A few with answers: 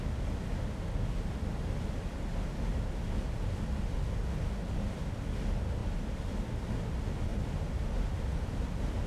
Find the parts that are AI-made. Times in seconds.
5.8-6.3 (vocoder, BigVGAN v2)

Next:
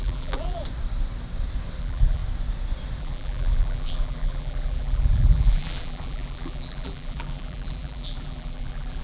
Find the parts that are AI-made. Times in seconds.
0.0-0.6 (vocoder, BigVGAN v2); 1.8-2.2; 3.0-9.0

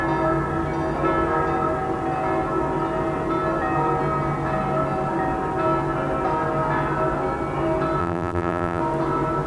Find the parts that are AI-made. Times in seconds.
8.0-8.8 (vocoder, BigVGAN v2)

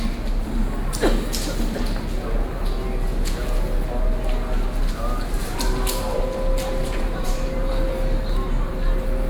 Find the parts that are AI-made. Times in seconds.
5.4-6.2 (vocoder, BigVGAN v2); 6.8-7.7

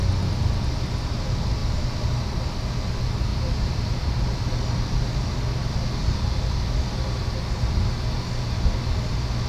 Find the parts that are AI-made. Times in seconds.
1.6-2.4 (vocoder, BigVGAN v2); 3.3-4.1

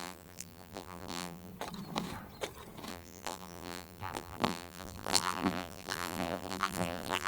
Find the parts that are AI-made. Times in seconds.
0.0-1.5 (vocoder, BigVGAN v2); 2.9-7.3